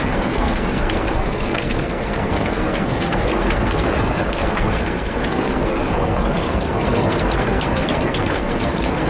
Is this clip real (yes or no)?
no